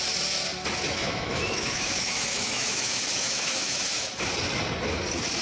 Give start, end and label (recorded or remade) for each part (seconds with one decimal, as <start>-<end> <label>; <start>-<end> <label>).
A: 0.0-0.9 recorded; 0.9-4.1 remade; 4.1-5.4 recorded